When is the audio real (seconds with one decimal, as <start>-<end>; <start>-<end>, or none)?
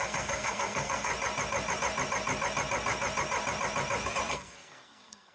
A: 1.1-4.3